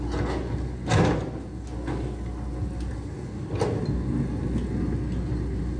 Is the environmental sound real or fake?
real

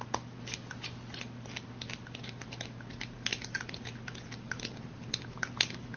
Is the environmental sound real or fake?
real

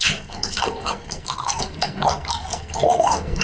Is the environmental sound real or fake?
fake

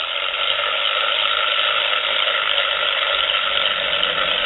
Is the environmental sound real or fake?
real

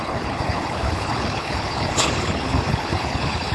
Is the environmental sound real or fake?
fake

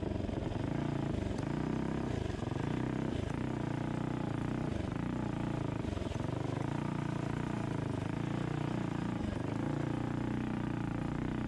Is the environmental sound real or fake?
real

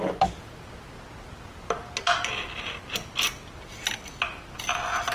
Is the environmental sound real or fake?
real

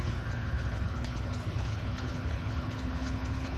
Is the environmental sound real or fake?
fake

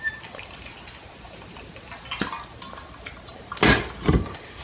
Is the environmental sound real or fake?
real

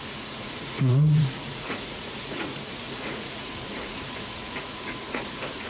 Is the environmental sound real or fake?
fake